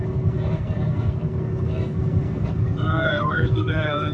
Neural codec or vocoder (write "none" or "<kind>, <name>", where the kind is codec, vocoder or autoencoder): codec, SNAC